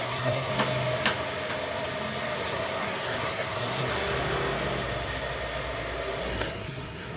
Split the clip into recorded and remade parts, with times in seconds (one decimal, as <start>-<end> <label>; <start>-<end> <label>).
0.0-0.5 remade; 0.5-2.4 recorded; 2.4-3.9 remade; 3.9-6.2 recorded; 6.2-7.2 remade